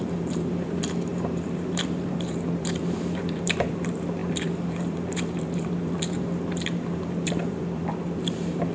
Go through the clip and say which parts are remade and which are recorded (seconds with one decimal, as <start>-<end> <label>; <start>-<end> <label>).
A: 0.0-8.7 remade